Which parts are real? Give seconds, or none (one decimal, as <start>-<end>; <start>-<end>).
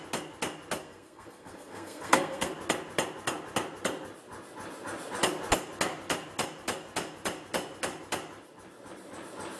0.0-0.8; 2.5-9.6